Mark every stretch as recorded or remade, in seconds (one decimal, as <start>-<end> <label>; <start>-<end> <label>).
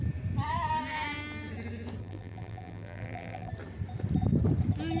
0.0-2.0 recorded; 2.0-3.5 remade; 3.5-5.0 recorded